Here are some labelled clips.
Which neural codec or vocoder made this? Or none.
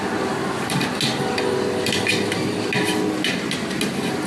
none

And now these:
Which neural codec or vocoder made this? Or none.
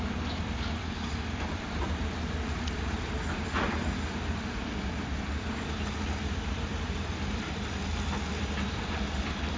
vocoder, BigVGAN v2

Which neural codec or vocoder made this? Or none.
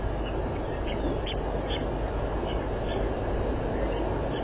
none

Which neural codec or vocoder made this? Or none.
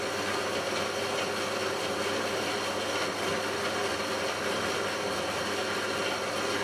none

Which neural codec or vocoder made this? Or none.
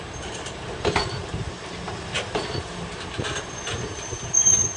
vocoder, BigVGAN v2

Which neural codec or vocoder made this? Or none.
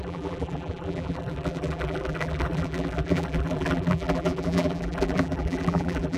vocoder, BigVGAN v2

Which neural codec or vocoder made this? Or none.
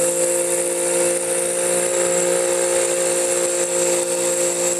none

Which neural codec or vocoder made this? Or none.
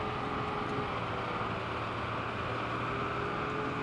none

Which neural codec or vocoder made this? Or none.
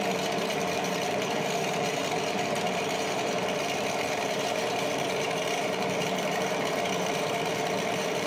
vocoder, BigVGAN v2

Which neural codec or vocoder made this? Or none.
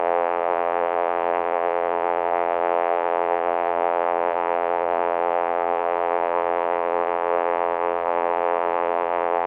vocoder, BigVGAN v2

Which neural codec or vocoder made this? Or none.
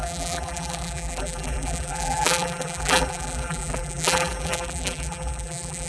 vocoder, BigVGAN v2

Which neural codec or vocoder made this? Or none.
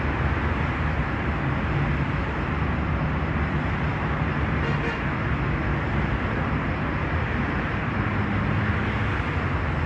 none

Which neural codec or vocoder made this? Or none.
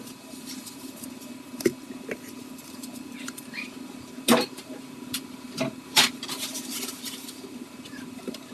vocoder, BigVGAN v2